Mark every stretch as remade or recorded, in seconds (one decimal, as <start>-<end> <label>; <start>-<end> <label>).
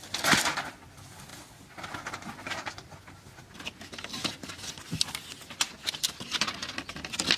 0.0-7.4 recorded